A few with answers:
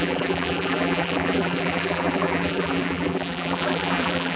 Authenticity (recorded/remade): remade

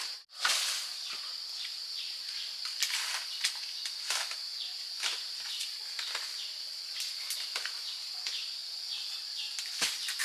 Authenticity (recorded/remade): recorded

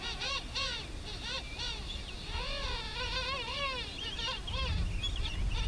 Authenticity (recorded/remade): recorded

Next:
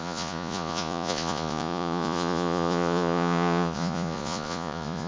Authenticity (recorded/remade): remade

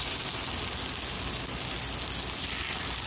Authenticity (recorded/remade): recorded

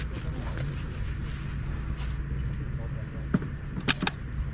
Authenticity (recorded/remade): recorded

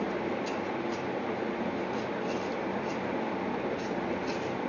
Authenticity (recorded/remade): recorded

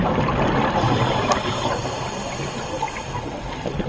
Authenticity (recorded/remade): recorded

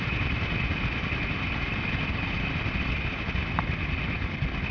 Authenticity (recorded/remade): recorded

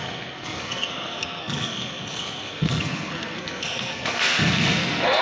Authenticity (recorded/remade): remade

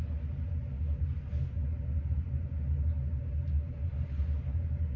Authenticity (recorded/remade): recorded